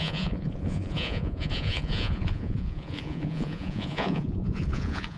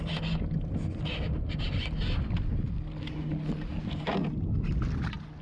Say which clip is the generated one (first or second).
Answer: first